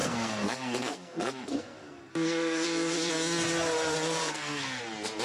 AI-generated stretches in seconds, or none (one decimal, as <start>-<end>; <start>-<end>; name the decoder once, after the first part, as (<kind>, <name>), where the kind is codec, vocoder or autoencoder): 0.0-3.1 (codec, SNAC); 4.2-4.8